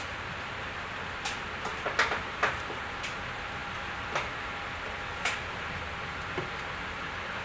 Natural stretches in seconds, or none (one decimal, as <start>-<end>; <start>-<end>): 0.0-7.4